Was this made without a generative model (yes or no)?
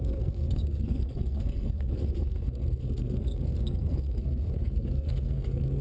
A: no